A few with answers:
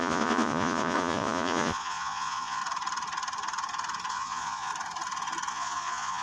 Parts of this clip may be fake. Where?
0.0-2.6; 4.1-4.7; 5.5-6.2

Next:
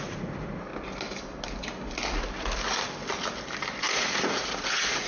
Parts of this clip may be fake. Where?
0.0-0.7; 3.8-5.1

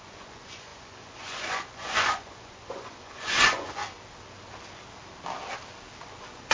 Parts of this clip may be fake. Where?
0.0-3.8; 6.0-6.5

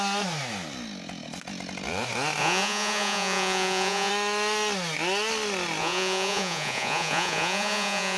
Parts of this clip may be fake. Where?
2.4-4.1; 5.8-8.2

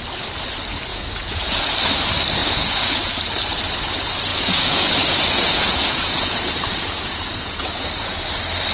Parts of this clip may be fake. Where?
0.9-1.6; 2.4-3.2; 4.3-8.2